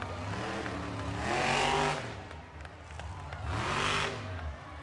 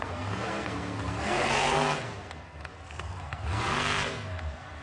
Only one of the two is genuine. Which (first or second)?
first